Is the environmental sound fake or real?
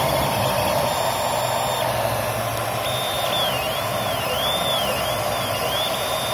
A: real